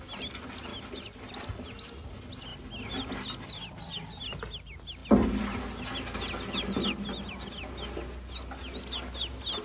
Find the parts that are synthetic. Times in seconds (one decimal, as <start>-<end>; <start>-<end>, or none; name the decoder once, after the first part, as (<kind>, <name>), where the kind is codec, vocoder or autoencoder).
none